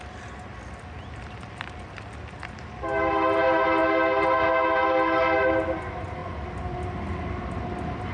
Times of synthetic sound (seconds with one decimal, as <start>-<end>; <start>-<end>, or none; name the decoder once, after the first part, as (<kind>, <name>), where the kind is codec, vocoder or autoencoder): none